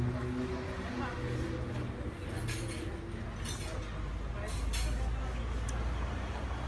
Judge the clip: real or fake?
real